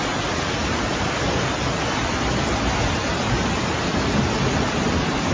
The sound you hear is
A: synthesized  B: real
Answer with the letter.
B